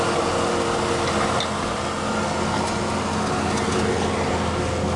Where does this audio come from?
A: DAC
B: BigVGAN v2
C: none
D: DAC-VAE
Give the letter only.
C